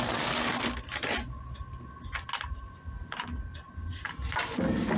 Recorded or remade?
recorded